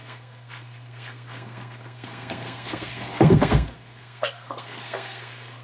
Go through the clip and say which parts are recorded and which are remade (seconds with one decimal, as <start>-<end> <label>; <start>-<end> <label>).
0.0-5.6 remade